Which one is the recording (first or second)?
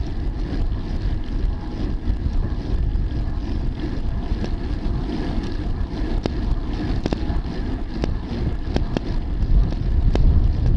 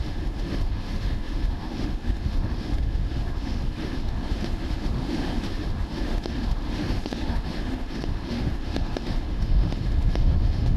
first